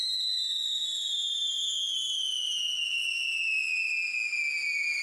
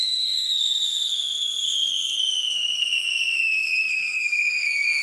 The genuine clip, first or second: first